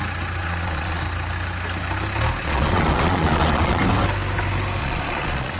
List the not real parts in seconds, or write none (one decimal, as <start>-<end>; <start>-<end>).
0.4-1.0; 2.4-3.8; 4.8-5.6